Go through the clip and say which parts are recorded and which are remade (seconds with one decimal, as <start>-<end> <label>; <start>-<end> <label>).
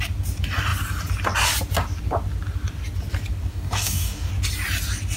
0.0-3.5 recorded; 3.5-4.3 remade; 4.3-5.2 recorded